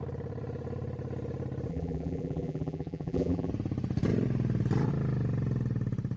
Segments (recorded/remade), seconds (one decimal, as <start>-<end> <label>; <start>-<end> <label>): 0.0-1.7 recorded; 1.7-3.5 remade; 3.5-6.2 recorded